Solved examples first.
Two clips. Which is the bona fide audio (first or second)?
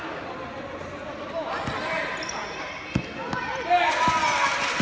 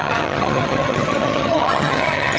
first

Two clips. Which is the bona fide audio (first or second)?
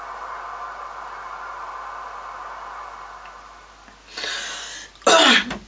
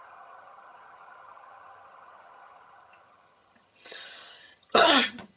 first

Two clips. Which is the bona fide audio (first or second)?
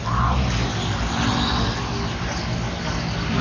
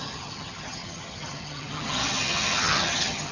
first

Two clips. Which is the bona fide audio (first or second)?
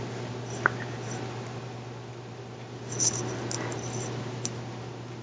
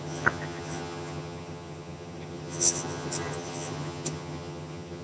first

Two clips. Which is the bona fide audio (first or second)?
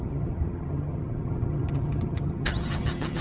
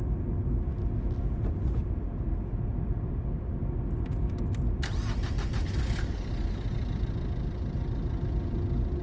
second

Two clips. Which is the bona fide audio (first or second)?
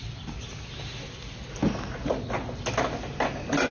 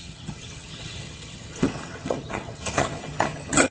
first